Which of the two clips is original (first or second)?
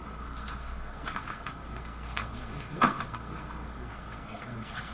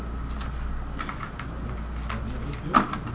second